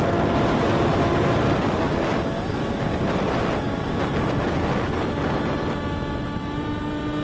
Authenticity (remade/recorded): recorded